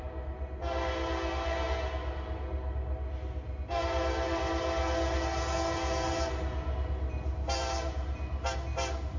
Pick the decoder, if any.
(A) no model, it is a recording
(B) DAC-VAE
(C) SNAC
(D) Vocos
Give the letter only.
A